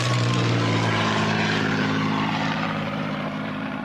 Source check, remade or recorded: remade